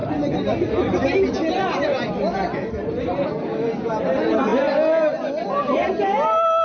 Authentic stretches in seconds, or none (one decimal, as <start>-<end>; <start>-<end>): 0.0-6.6